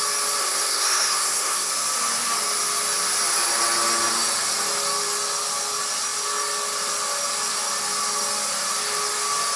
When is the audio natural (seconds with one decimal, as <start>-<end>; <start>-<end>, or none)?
0.0-0.4; 1.7-9.6